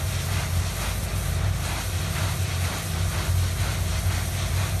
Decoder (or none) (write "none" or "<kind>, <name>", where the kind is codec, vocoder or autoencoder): none